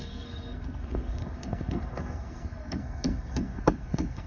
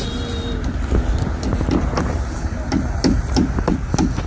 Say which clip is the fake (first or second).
first